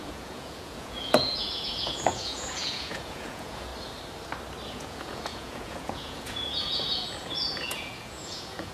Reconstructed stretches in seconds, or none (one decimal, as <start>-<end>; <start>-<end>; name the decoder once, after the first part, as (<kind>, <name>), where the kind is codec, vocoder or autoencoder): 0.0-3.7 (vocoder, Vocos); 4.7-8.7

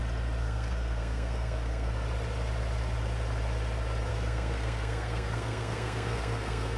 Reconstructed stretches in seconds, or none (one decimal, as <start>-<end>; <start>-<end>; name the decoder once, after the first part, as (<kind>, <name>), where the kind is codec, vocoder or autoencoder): 0.4-1.9 (codec, SNAC); 4.1-6.8

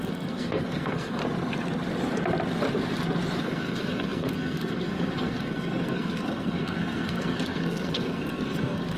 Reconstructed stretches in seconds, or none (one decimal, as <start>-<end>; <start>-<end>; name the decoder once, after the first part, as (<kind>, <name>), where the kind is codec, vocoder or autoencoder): 0.0-1.2 (codec, SNAC); 3.4-9.0